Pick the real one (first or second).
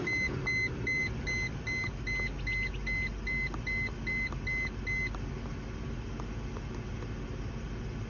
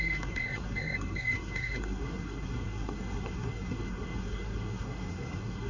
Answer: first